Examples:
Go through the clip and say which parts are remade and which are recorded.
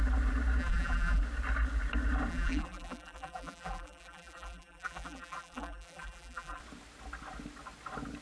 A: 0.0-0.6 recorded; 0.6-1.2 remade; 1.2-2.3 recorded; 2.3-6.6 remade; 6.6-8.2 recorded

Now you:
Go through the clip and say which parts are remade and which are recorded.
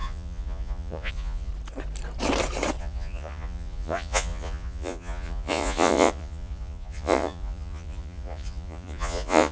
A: 0.0-1.5 remade; 1.5-2.8 recorded; 2.8-9.5 remade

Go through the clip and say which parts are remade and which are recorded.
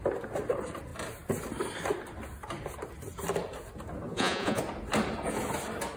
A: 0.0-4.1 recorded; 4.1-4.6 remade; 4.6-6.0 recorded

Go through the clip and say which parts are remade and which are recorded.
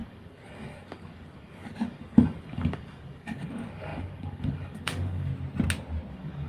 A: 0.0-5.3 remade; 5.3-6.1 recorded; 6.1-6.5 remade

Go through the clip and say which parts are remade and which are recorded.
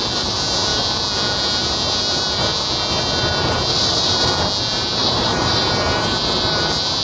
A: 0.0-3.7 recorded; 3.7-4.3 remade; 4.3-5.0 recorded; 5.0-5.6 remade; 5.6-7.0 recorded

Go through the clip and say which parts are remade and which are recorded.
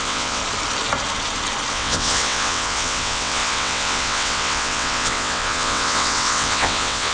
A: 0.0-0.4 remade; 0.4-1.7 recorded; 1.7-7.1 remade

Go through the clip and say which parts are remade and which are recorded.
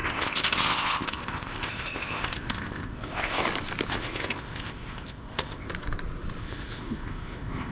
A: 0.0-3.4 remade; 3.4-3.9 recorded; 3.9-5.7 remade; 5.7-6.4 recorded; 6.4-7.7 remade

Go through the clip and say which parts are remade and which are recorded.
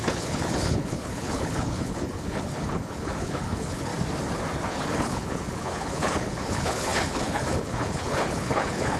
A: 0.0-3.9 remade; 3.9-4.7 recorded; 4.7-9.0 remade